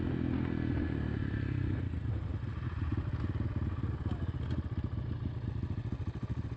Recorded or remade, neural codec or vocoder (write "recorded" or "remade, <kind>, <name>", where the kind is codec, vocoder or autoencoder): recorded